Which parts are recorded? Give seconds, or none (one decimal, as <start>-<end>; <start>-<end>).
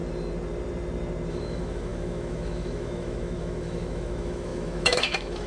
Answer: 0.0-1.3